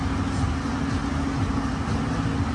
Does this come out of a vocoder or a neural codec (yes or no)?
no